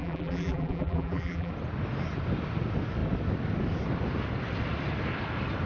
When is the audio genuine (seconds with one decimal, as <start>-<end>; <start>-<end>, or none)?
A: 1.5-5.7

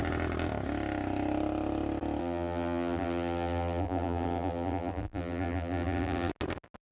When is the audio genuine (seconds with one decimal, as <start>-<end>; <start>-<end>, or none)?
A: 0.0-2.2; 6.3-6.9